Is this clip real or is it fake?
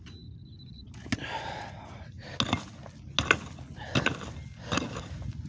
real